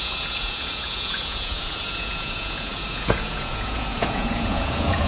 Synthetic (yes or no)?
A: yes